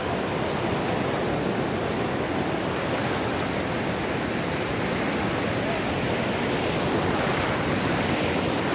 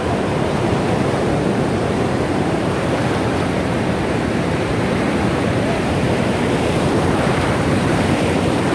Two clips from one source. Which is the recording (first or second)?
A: first